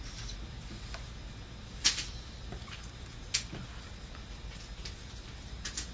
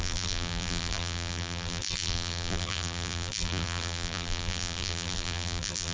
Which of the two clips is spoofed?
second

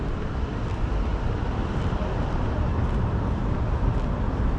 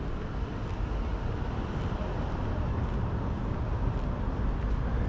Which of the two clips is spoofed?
first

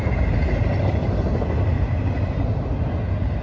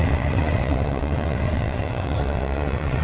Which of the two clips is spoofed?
second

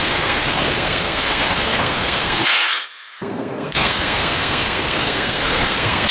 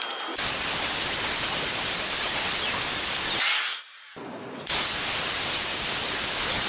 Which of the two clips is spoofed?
first